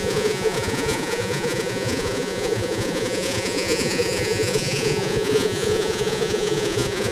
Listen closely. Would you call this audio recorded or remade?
remade